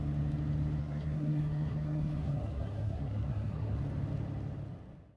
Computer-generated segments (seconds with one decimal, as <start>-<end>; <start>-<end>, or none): 0.8-3.8